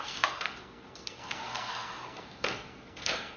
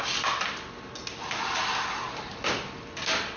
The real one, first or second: second